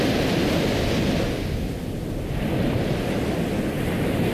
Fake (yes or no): no